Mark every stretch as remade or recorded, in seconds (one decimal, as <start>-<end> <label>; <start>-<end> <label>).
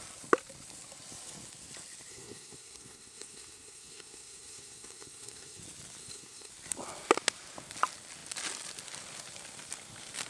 0.0-2.1 recorded; 2.1-5.6 remade; 5.6-6.0 recorded; 6.0-6.5 remade; 6.5-10.3 recorded